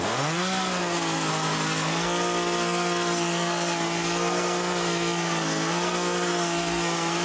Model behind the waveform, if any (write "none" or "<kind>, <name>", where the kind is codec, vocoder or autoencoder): codec, SNAC